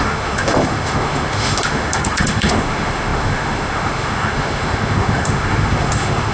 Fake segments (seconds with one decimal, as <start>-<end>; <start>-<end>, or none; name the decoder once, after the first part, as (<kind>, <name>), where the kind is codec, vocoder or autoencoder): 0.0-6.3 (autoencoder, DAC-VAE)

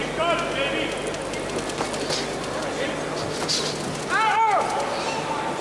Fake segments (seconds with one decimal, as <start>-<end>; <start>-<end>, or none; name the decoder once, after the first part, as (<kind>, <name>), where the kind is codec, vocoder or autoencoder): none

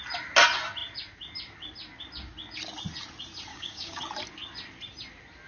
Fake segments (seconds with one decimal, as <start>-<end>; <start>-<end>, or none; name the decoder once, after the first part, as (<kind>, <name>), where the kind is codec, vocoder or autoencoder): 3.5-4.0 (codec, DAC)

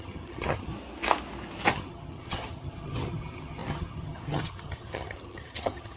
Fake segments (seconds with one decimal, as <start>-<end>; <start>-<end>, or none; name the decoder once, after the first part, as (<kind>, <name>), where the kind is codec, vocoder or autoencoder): 0.0-0.7 (vocoder, HiFi-GAN); 1.7-6.0

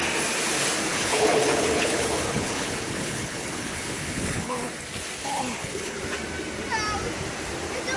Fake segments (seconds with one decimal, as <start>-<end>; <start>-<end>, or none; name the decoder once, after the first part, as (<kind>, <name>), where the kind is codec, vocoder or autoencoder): 0.9-4.7 (codec, HILCodec); 5.2-6.0

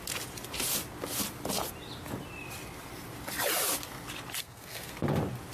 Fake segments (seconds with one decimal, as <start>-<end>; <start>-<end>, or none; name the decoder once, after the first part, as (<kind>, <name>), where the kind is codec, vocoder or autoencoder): 4.4-4.9 (codec, SNAC)

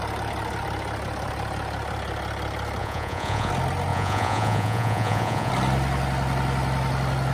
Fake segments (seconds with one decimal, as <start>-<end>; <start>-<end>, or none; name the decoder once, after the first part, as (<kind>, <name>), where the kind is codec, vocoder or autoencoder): 2.8-3.5 (vocoder, Vocos); 3.9-5.5